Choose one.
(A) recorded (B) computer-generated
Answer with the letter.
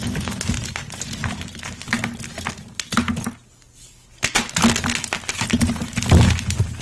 A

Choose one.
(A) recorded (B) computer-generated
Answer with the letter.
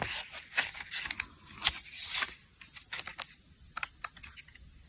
A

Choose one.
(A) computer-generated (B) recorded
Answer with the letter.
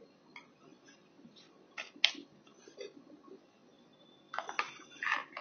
B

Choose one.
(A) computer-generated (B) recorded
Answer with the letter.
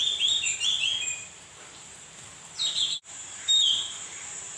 A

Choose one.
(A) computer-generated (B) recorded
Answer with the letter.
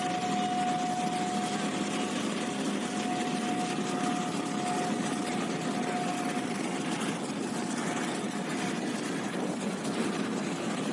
B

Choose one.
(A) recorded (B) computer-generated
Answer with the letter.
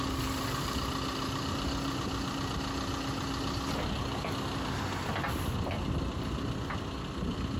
A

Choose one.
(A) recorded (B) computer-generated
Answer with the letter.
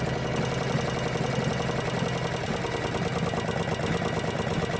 A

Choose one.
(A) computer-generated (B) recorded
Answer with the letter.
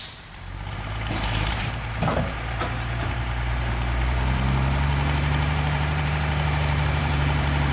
A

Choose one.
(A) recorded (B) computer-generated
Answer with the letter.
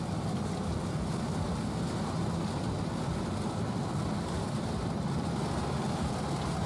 A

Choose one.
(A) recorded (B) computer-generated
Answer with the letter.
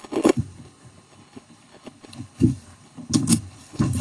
B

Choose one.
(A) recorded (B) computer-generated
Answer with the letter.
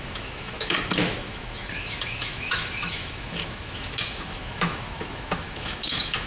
B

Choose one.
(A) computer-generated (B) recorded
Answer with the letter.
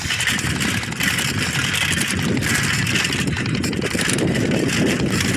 A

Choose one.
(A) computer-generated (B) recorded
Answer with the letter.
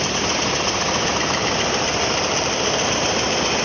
B